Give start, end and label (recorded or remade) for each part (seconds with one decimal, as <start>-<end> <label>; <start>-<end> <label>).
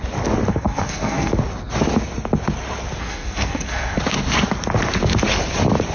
0.0-0.5 recorded; 0.5-1.3 remade; 1.3-3.0 recorded; 3.0-4.0 remade; 4.0-5.9 recorded